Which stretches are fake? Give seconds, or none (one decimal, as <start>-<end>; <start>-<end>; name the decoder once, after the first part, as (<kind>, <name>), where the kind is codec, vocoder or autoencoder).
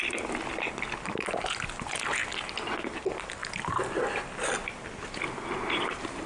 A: none